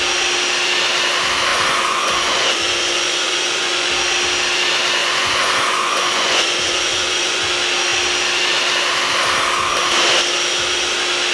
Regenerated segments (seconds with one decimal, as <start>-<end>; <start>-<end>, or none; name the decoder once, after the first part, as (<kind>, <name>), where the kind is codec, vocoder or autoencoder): 1.5-3.9 (vocoder, Vocos); 5.0-7.5